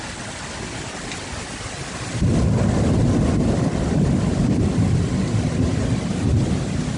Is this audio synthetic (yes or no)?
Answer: no